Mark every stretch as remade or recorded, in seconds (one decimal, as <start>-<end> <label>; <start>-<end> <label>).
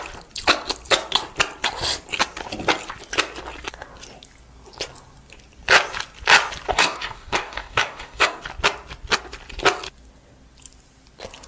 0.0-6.7 recorded; 6.7-8.4 remade; 8.4-11.5 recorded